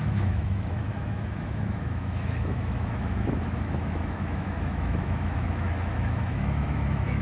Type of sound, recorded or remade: remade